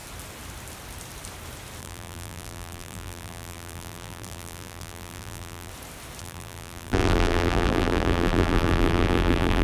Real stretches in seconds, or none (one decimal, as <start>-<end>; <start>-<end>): 0.0-1.8; 5.7-6.2